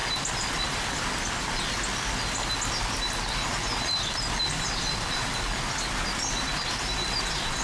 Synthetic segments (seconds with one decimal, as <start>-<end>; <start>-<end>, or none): none